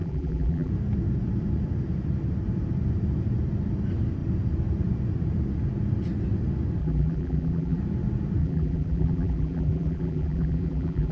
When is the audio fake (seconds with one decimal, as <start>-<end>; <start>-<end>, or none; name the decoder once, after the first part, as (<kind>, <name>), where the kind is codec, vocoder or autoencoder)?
0.0-0.7 (vocoder, BigVGAN v2); 6.8-7.8; 8.4-11.1